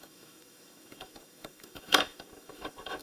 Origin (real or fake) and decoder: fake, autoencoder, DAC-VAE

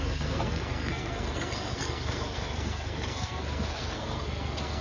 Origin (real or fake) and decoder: fake, codec, SNAC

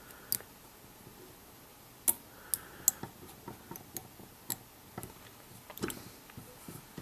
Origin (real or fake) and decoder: real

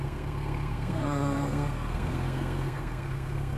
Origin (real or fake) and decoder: fake, codec, SNAC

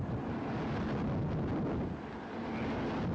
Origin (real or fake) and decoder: real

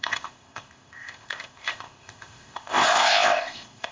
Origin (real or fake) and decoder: fake, codec, ZipCodec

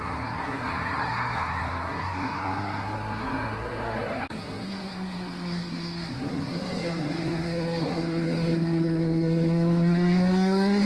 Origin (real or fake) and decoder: fake, codec, SNAC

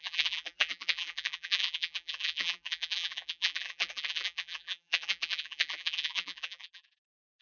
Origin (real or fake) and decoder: fake, vocoder, BigVGAN v2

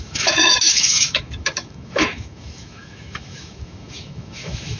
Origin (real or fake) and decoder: fake, autoencoder, DAC-VAE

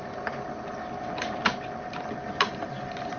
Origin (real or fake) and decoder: real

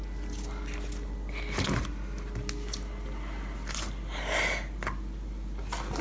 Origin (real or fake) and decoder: real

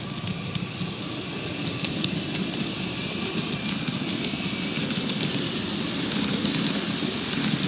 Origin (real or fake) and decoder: real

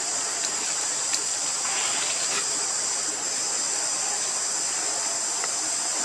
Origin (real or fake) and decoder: real